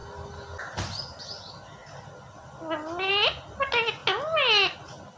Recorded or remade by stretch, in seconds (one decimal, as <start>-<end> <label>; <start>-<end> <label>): 0.0-5.2 recorded